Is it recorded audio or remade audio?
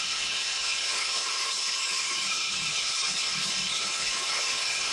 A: remade